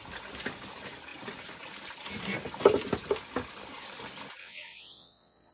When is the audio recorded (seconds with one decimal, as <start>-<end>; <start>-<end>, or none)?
0.0-4.4